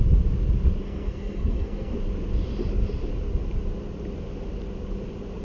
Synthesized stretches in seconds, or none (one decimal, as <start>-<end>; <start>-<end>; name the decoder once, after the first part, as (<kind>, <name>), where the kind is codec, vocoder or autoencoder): 0.8-1.9 (codec, SNAC)